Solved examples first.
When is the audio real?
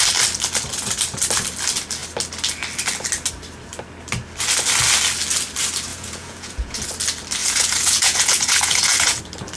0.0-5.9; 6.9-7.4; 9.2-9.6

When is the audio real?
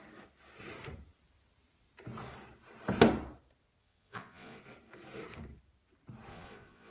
0.0-3.8; 4.6-6.3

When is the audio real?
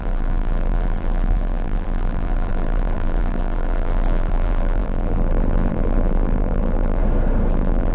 7.0-7.5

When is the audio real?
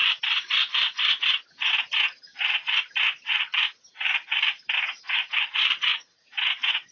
1.7-2.3; 6.4-6.9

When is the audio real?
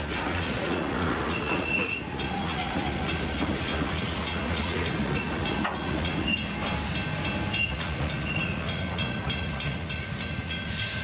6.3-7.7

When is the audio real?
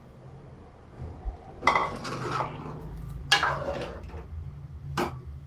0.0-5.5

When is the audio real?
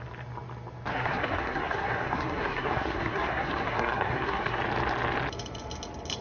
0.0-0.9; 4.6-6.2